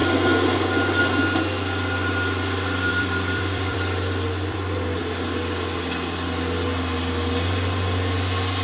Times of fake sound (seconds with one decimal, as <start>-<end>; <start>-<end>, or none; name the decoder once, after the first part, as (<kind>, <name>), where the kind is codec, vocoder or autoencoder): 2.9-5.0 (vocoder, BigVGAN v2)

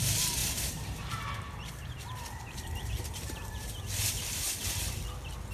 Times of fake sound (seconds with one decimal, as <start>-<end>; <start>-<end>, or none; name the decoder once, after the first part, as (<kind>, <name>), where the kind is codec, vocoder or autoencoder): 0.4-3.7 (vocoder, BigVGAN v2)

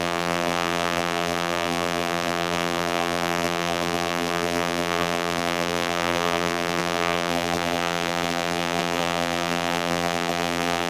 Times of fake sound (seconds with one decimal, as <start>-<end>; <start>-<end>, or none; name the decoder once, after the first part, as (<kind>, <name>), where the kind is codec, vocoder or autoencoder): 0.0-10.9 (vocoder, BigVGAN v2)

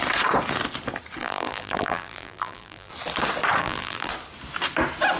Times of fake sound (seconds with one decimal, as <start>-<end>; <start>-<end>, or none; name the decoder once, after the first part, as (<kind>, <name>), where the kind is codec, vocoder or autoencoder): 1.2-2.9 (vocoder, BigVGAN v2); 3.6-4.1

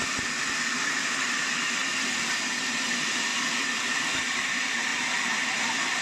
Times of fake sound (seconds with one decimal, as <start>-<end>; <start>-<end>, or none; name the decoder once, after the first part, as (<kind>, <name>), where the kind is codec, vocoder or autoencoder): none

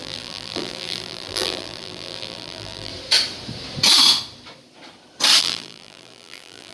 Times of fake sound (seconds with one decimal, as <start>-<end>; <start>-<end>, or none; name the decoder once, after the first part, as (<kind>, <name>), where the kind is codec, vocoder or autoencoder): 0.0-2.9 (vocoder, BigVGAN v2); 5.4-6.7

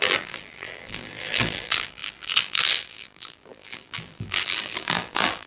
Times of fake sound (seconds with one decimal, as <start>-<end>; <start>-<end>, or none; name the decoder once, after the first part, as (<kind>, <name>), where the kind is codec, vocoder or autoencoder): 0.0-5.5 (vocoder, BigVGAN v2)

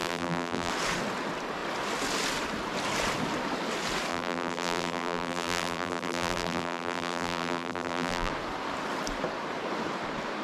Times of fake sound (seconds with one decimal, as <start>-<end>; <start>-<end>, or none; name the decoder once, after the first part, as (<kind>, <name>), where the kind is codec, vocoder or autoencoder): 0.0-0.7 (vocoder, BigVGAN v2); 4.1-8.3